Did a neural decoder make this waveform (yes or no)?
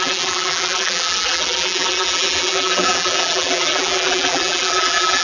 yes